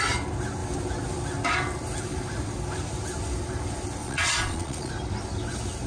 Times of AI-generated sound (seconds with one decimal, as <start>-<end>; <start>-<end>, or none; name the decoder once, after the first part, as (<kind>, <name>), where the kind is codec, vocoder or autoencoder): 4.0-4.9 (vocoder, Vocos)